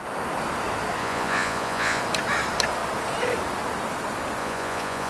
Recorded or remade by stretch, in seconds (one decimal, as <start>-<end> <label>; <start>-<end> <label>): 0.0-1.0 recorded; 1.0-2.0 remade; 2.0-4.4 recorded; 4.4-5.1 remade